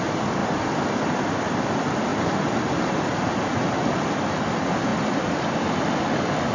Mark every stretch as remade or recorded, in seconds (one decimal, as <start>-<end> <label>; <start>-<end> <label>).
0.0-0.4 recorded; 0.4-1.6 remade; 1.6-4.9 recorded; 4.9-5.6 remade; 5.6-6.5 recorded